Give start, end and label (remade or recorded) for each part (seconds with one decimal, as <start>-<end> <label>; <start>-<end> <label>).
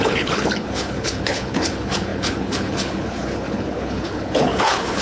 0.0-5.0 remade